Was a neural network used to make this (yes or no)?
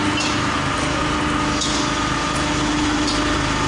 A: no